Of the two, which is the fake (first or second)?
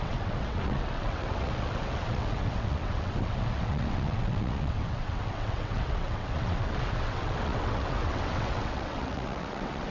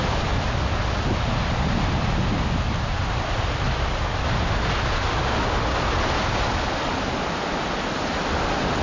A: first